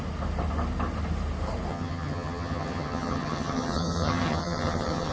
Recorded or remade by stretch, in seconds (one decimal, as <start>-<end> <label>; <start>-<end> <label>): 0.0-1.7 recorded; 1.7-5.1 remade